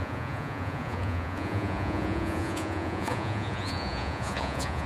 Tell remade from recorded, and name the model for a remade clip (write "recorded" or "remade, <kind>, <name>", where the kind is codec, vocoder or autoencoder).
remade, vocoder, Vocos